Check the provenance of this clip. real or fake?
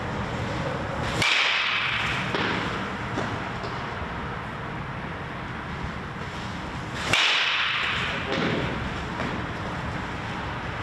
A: real